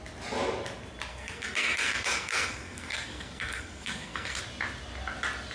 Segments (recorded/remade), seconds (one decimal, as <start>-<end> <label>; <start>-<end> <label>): 0.0-1.1 recorded; 1.1-4.4 remade; 4.4-5.5 recorded